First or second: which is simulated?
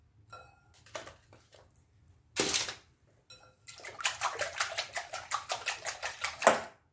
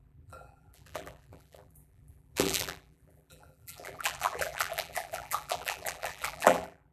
second